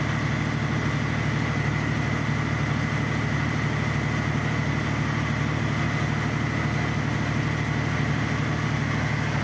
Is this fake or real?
real